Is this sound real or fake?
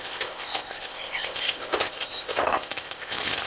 fake